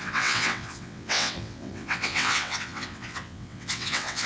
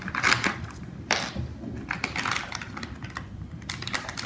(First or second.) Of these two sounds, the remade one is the first